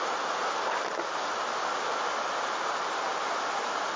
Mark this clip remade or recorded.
recorded